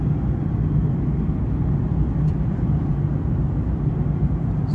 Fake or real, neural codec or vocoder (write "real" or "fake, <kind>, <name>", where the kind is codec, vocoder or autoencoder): real